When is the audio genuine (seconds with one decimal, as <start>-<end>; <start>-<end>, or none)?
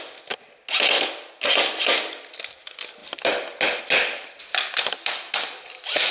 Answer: 0.0-6.1